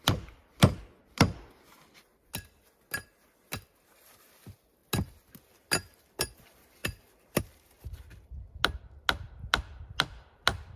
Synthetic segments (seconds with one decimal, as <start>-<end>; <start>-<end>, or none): none